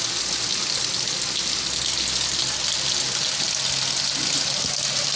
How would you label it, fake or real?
real